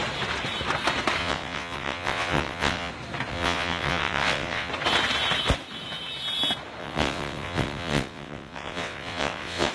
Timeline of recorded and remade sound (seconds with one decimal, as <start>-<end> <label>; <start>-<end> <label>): 0.0-1.2 recorded; 1.2-2.9 remade; 2.9-3.3 recorded; 3.3-4.7 remade; 4.7-6.8 recorded; 6.8-9.7 remade